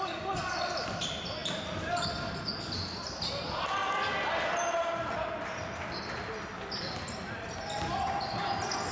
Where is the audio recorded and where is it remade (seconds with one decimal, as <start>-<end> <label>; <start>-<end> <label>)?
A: 0.0-8.9 recorded